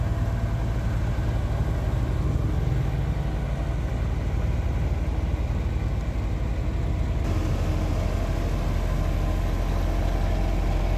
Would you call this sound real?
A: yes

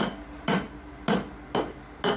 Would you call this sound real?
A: yes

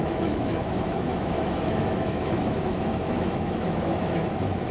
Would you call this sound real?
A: no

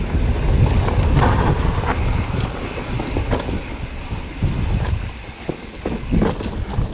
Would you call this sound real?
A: yes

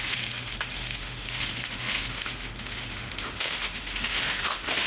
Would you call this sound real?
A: no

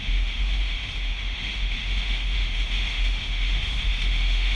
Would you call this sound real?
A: no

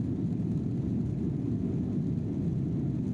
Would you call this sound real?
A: yes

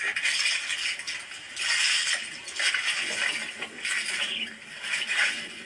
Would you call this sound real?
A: yes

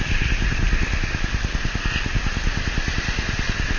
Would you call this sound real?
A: yes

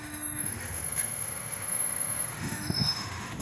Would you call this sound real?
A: no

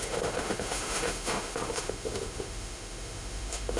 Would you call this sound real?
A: no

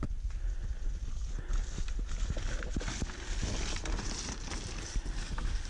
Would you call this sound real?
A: yes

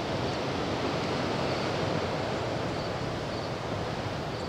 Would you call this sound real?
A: yes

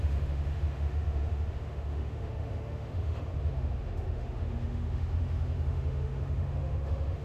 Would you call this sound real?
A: no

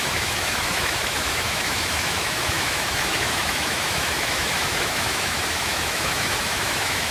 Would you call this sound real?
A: no